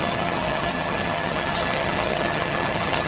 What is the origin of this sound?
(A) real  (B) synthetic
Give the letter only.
B